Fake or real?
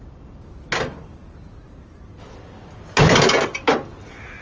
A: real